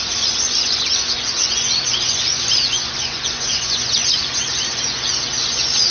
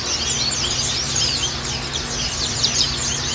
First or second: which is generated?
first